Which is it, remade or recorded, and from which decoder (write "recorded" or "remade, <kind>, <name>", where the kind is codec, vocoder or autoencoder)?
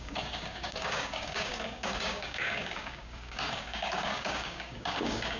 remade, codec, DAC